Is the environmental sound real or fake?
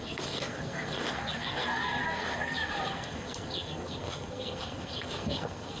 fake